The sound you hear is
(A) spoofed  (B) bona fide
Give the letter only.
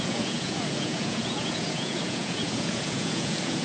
A